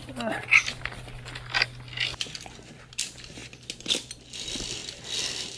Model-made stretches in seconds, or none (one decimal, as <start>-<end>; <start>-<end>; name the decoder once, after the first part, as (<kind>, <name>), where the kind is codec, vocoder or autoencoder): none